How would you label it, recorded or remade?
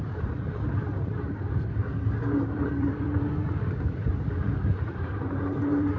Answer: remade